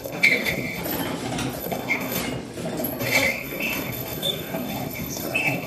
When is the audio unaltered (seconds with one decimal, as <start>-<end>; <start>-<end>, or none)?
0.8-1.6; 2.2-3.0